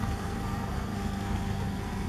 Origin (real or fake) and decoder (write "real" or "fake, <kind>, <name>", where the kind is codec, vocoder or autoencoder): fake, codec, SNAC